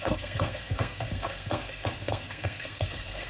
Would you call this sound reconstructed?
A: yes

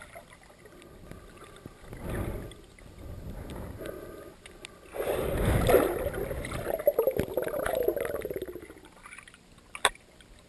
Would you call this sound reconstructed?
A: no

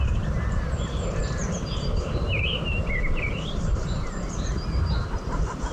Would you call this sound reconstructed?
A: yes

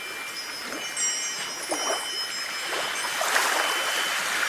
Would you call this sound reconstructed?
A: no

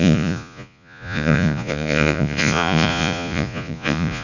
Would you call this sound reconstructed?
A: yes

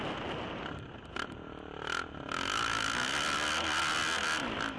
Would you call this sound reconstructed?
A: no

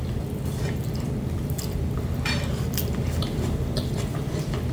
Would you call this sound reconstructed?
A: yes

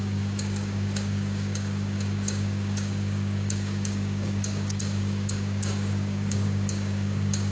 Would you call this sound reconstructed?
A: yes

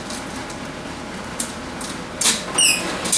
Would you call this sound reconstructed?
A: no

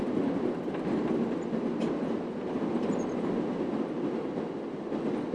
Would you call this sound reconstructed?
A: no